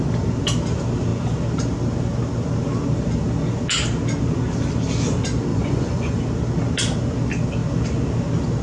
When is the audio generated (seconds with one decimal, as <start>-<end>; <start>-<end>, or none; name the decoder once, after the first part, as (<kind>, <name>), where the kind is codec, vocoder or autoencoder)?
5.5-6.2 (vocoder, Vocos)